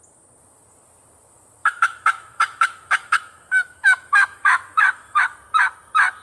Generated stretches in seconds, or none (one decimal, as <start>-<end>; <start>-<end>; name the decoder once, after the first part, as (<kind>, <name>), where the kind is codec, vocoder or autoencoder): 1.6-5.2 (autoencoder, DAC-VAE)